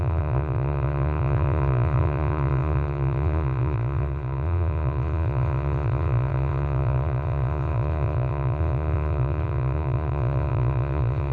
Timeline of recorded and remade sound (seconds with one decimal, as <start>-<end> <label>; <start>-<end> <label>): 0.0-11.3 remade